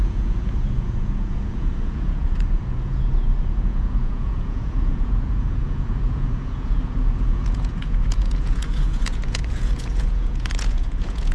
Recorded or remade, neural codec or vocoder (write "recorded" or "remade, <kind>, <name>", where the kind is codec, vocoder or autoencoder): remade, vocoder, Vocos